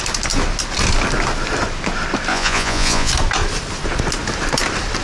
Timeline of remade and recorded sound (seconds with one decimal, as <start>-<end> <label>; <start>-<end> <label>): 0.0-2.3 recorded; 2.3-3.1 remade; 3.1-5.0 recorded